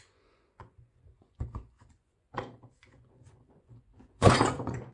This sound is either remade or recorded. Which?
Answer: remade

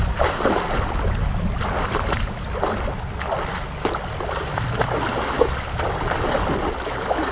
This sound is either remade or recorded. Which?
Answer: recorded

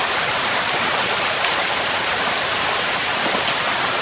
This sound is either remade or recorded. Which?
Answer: recorded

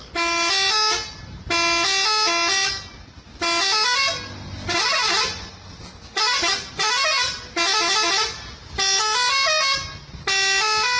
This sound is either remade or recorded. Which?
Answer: recorded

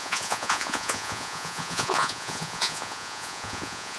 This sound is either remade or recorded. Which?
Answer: remade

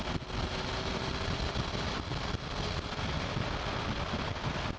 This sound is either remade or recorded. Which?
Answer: recorded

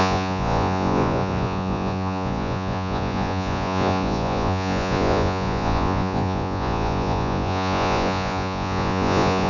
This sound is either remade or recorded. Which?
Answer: remade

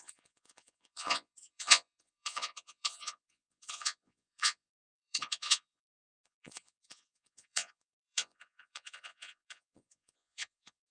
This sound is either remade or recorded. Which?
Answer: remade